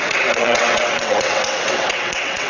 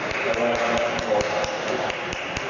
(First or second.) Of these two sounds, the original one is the second